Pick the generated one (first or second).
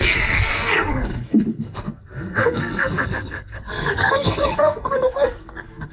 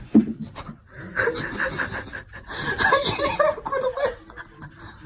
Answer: first